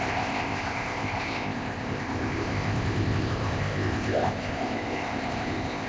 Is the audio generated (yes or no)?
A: yes